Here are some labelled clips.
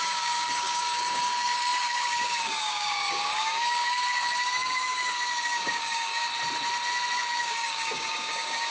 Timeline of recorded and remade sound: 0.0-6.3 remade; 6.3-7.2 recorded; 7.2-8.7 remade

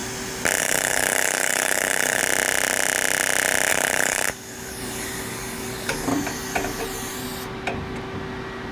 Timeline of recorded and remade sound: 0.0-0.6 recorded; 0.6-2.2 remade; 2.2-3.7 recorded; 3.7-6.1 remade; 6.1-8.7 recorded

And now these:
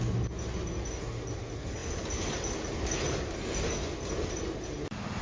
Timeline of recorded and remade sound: 0.0-5.2 recorded

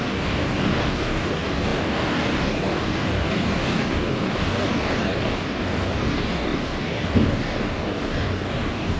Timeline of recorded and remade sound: 0.0-9.0 remade

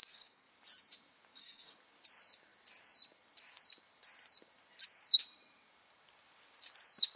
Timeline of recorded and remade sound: 0.0-0.5 remade; 0.5-1.3 recorded; 1.3-1.8 remade; 1.8-7.2 recorded

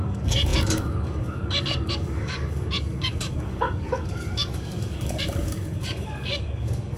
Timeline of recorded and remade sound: 0.0-7.0 remade

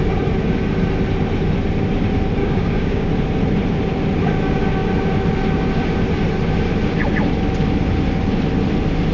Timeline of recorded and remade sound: 0.0-2.4 recorded; 2.4-3.1 remade; 3.1-9.1 recorded

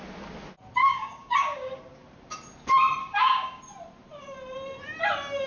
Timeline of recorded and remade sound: 0.0-0.8 recorded; 0.8-1.8 remade; 1.8-3.0 recorded; 3.0-3.6 remade; 3.6-5.5 recorded